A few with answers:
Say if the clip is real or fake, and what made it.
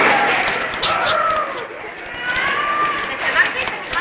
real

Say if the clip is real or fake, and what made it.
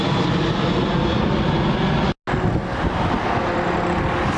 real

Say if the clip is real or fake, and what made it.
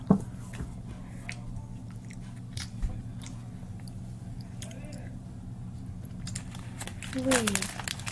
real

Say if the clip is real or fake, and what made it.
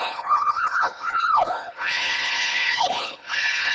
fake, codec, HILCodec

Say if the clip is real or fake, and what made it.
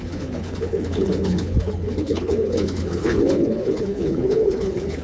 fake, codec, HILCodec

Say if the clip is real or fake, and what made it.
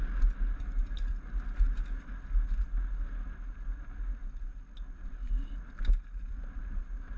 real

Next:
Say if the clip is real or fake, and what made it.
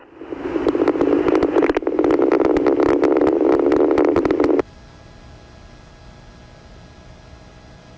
real